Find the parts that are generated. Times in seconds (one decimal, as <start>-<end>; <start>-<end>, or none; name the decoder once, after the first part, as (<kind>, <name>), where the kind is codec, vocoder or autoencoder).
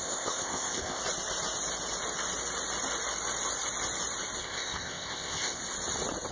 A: 0.0-1.0 (codec, ZipCodec); 4.4-5.6